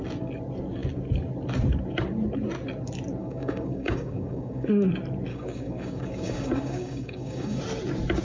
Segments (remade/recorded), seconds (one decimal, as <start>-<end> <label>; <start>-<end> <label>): 0.0-3.2 recorded; 3.2-4.7 remade; 4.7-5.3 recorded; 5.3-7.6 remade; 7.6-8.2 recorded